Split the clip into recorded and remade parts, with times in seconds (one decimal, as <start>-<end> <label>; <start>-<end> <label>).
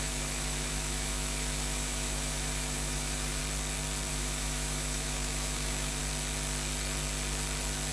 0.0-3.4 remade; 3.4-4.1 recorded; 4.1-6.0 remade; 6.0-7.9 recorded